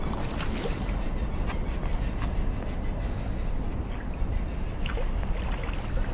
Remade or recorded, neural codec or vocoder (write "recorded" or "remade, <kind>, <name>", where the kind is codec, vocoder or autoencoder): recorded